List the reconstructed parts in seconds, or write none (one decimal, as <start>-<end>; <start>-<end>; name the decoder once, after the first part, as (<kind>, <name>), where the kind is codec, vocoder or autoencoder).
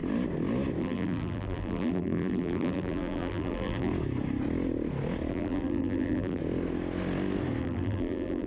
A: 0.8-3.9 (vocoder, BigVGAN v2); 5.3-6.4; 7.6-8.5